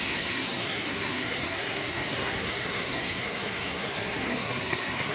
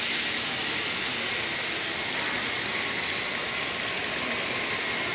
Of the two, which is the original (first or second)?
second